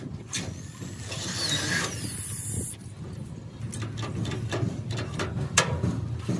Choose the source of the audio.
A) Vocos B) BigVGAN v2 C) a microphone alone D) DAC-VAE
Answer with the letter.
C